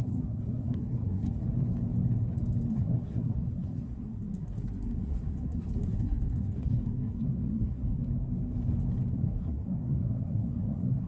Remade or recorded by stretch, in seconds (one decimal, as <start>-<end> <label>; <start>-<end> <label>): 0.0-1.4 remade; 1.4-2.7 recorded; 2.7-8.0 remade; 8.0-9.1 recorded; 9.1-11.1 remade